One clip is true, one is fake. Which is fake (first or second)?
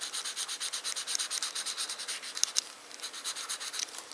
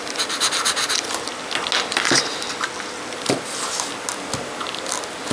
first